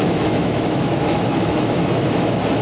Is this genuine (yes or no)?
no